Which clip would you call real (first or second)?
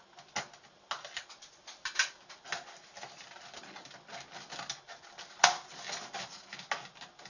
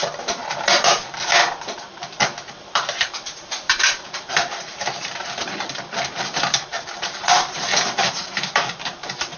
first